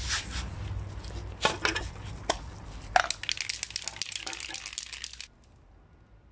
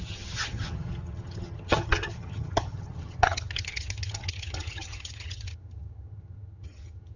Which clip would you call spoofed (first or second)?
second